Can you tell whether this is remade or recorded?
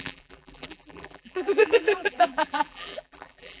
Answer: remade